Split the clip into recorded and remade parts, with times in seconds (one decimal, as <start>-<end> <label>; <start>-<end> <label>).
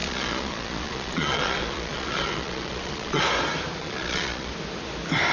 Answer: 0.0-3.2 remade; 3.2-3.8 recorded; 3.8-4.5 remade; 4.5-5.3 recorded